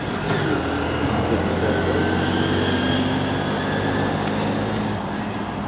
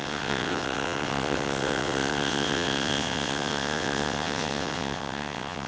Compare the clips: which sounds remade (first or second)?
second